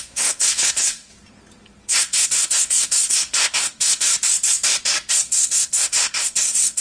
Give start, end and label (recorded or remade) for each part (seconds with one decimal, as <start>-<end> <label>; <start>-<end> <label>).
0.0-1.1 remade; 1.1-1.9 recorded; 1.9-4.1 remade; 4.1-5.1 recorded; 5.1-6.8 remade